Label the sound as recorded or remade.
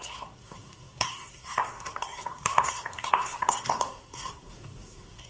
remade